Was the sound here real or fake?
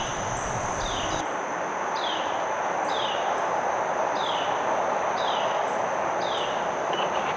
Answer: real